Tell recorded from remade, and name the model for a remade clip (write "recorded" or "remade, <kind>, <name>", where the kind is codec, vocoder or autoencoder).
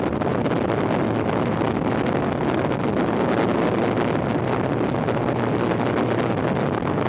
recorded